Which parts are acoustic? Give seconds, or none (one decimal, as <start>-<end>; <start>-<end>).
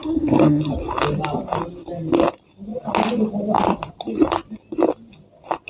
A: 0.6-5.7